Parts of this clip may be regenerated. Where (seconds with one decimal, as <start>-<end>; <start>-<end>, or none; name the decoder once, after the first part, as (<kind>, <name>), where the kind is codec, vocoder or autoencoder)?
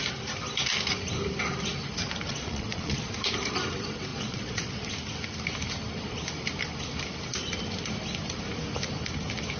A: 2.3-3.1 (vocoder, Vocos); 4.1-4.9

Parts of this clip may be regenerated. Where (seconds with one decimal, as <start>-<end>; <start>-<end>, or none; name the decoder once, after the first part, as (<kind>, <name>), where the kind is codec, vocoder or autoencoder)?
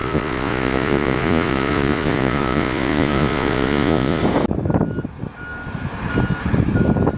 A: 0.0-4.2 (vocoder, Vocos)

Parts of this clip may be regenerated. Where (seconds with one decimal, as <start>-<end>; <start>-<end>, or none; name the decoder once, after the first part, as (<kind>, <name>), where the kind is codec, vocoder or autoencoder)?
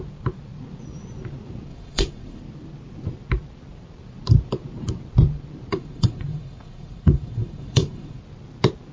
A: 1.7-2.4 (vocoder, Vocos); 5.7-8.2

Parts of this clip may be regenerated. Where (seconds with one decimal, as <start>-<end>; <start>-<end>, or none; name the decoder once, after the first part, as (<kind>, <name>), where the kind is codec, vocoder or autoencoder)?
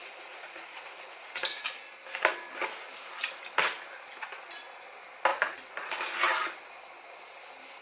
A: 0.0-1.6 (vocoder, Vocos); 5.3-6.0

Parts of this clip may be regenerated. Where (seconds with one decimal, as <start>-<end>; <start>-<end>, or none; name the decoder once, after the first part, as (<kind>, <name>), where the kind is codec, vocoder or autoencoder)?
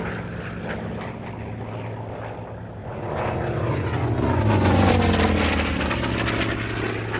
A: 2.8-4.9 (vocoder, Vocos)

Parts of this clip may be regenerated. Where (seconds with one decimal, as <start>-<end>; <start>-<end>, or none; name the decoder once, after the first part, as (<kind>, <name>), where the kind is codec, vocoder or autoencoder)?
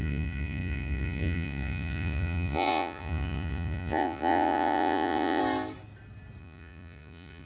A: 0.0-5.4 (vocoder, Vocos); 6.4-7.5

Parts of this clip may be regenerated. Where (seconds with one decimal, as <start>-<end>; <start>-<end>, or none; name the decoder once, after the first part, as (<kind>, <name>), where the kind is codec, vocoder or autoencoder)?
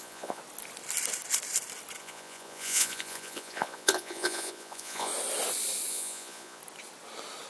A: 0.0-0.4 (vocoder, Vocos); 2.0-5.1; 5.9-6.6